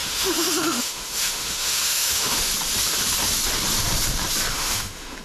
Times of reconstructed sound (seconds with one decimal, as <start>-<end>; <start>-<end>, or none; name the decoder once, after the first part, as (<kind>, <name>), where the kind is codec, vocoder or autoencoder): 0.0-2.5 (autoencoder, DAC-VAE); 4.5-5.2